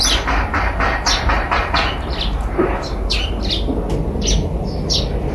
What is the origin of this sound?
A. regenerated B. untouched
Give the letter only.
B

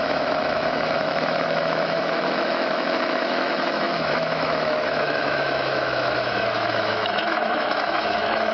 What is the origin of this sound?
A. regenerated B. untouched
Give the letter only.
A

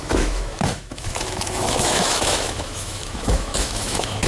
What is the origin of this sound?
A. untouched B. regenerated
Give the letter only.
B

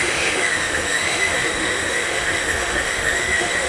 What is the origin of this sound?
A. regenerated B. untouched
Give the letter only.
A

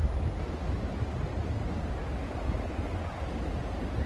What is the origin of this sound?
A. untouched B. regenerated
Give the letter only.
A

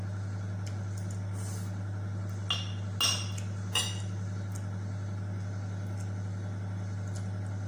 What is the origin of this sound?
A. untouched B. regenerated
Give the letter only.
A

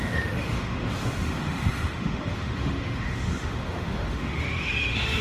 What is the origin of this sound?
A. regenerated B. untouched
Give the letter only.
A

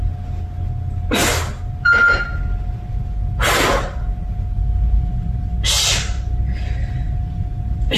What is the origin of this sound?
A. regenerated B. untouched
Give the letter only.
B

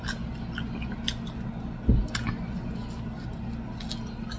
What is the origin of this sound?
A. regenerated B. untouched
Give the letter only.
B